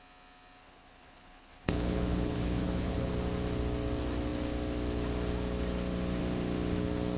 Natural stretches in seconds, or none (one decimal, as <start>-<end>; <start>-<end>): 0.0-0.6; 3.1-7.2